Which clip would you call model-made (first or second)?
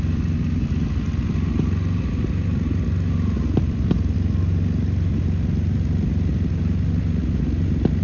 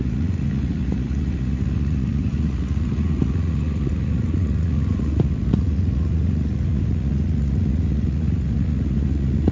second